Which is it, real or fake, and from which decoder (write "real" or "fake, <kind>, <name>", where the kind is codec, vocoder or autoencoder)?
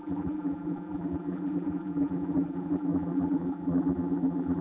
fake, vocoder, BigVGAN v2